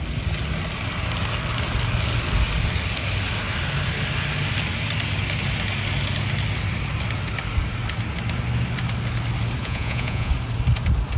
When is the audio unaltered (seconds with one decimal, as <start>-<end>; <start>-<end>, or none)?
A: 0.0-9.6; 10.3-11.2